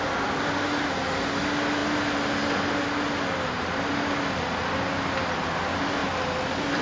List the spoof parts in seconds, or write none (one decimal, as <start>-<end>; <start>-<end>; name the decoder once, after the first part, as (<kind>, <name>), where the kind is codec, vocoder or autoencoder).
none